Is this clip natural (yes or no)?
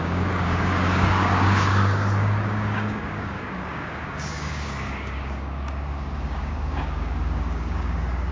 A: no